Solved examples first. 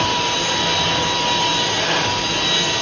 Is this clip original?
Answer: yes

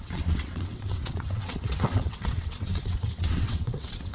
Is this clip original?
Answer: no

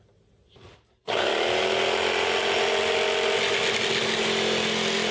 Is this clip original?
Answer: yes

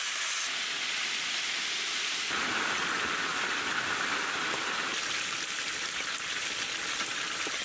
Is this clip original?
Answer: yes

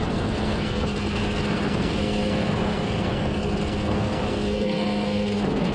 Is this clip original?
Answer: no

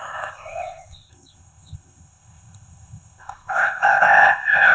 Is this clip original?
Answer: no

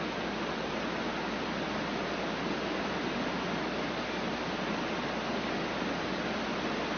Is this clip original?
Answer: yes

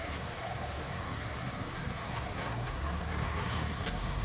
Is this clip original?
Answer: no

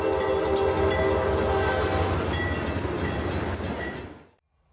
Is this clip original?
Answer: yes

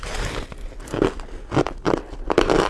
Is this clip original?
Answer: yes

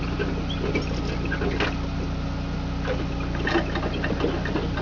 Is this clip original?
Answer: yes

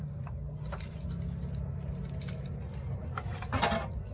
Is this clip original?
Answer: yes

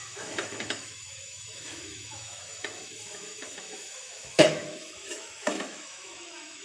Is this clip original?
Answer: no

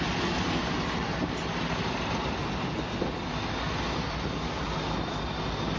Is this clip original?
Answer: yes